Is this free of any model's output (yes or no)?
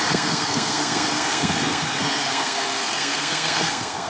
no